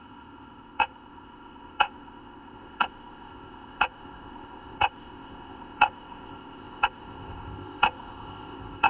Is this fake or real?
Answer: fake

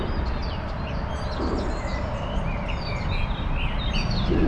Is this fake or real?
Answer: real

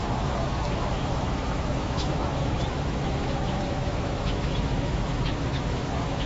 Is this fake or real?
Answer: fake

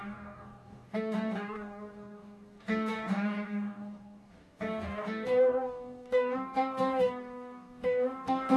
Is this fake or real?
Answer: fake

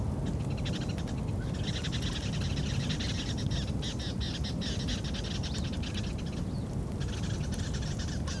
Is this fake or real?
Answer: real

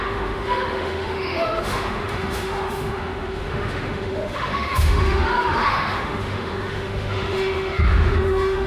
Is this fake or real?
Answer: fake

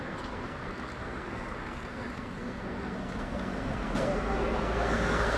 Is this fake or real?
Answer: fake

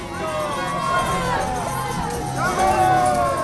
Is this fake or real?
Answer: real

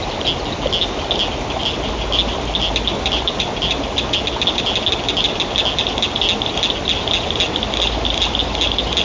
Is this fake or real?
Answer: real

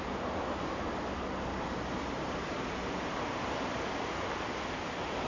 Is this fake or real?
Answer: real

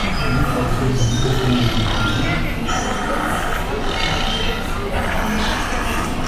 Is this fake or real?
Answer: real